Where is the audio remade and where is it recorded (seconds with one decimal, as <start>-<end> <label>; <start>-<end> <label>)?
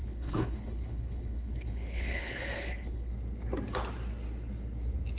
0.0-3.1 remade; 3.1-5.2 recorded